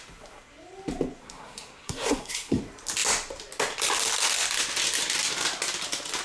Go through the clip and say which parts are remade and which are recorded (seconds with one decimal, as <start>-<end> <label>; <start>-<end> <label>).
0.0-1.2 recorded; 1.2-2.6 remade; 2.6-6.2 recorded